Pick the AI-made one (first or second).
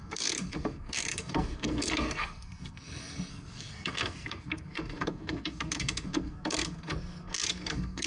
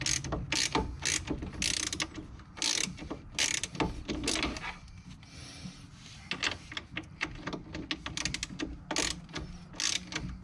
first